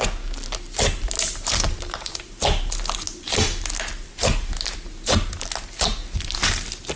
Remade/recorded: recorded